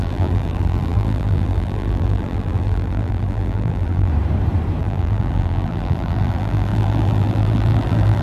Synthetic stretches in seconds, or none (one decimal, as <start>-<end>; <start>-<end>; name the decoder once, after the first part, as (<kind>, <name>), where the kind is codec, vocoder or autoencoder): 0.0-4.1 (vocoder, BigVGAN v2); 4.8-8.2